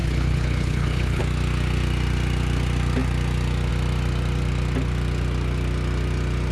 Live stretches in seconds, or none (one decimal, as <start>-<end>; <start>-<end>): 1.2-6.5